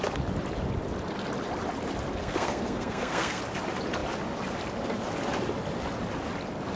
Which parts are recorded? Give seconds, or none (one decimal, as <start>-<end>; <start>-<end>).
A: 0.0-2.2; 3.4-6.8